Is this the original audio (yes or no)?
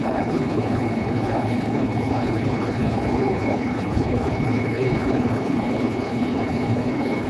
no